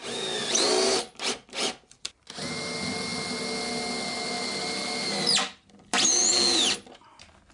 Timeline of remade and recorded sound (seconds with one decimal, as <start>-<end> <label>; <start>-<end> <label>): 0.0-7.5 recorded